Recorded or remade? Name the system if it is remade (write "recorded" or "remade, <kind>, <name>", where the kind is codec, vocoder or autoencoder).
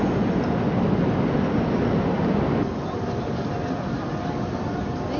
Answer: recorded